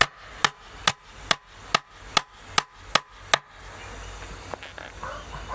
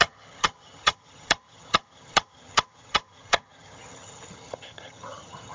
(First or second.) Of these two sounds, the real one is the first